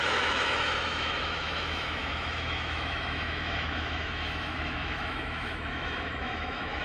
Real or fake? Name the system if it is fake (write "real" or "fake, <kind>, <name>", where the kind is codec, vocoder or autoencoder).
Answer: fake, autoencoder, DAC-VAE